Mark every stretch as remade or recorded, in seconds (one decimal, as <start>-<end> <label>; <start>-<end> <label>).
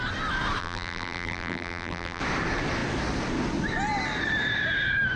0.0-0.6 recorded; 0.6-2.2 remade; 2.2-5.2 recorded